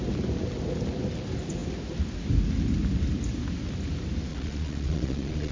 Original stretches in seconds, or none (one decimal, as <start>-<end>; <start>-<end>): 0.0-4.3